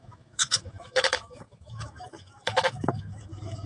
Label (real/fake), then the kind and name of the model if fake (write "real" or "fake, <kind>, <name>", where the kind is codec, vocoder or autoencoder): fake, autoencoder, DAC-VAE